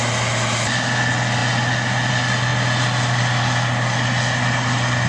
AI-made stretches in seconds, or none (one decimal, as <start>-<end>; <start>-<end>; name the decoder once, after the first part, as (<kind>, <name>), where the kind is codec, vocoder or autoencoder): none